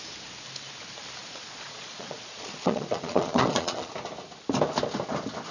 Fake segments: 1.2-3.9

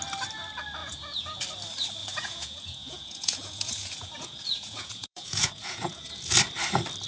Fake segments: 0.8-1.4; 2.0-6.3